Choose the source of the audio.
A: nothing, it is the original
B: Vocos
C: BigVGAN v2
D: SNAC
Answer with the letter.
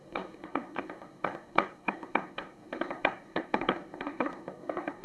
D